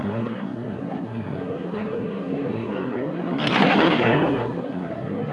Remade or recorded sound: remade